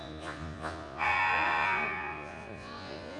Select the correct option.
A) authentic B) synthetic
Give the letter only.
B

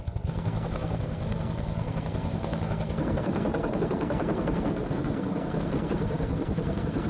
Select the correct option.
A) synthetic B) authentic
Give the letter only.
A